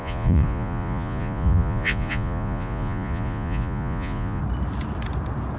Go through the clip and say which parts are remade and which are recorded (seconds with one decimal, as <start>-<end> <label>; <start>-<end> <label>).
0.0-4.4 remade; 4.4-5.6 recorded